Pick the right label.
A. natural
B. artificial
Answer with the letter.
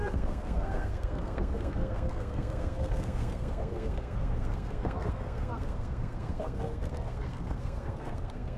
B